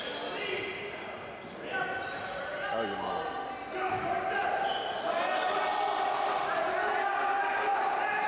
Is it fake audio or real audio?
real